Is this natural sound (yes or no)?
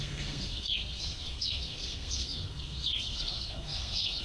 no